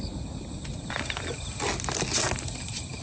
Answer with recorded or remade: recorded